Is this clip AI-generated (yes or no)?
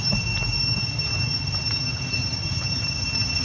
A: no